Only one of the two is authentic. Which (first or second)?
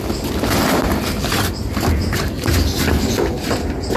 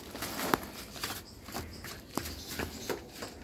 second